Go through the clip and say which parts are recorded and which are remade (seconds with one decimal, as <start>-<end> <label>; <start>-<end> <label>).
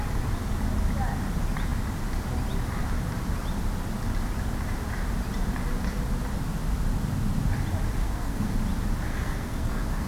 0.0-8.0 recorded; 8.0-8.6 remade; 8.6-9.1 recorded; 9.1-10.1 remade